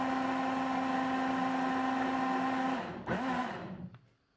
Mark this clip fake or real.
real